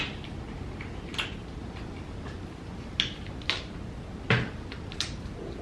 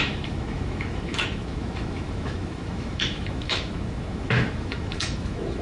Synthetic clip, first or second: second